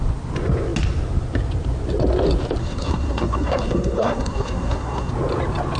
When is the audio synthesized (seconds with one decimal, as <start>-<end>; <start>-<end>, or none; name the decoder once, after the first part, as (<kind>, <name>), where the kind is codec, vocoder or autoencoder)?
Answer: 2.6-5.1 (codec, SNAC)